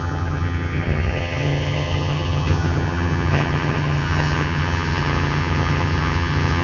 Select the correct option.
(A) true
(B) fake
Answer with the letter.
B